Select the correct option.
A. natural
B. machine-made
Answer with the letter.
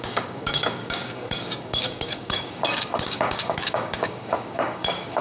B